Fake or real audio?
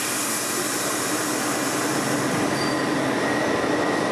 real